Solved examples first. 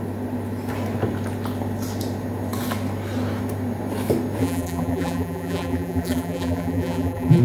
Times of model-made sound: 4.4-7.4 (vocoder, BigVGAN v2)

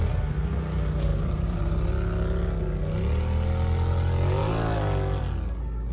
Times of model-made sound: 1.1-1.9 (vocoder, BigVGAN v2)

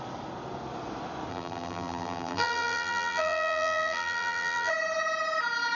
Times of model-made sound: 1.3-4.7 (vocoder, BigVGAN v2)

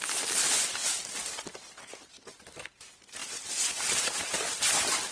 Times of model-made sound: 0.8-1.7 (vocoder, BigVGAN v2); 3.2-4.2

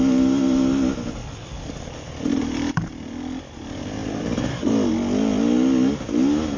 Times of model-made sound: 2.3-2.9 (vocoder, BigVGAN v2); 4.0-4.9